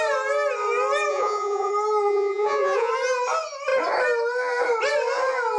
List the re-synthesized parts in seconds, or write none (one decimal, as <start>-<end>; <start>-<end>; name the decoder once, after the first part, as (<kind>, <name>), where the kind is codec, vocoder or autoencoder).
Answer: 1.1-1.7 (vocoder, Vocos); 2.1-2.9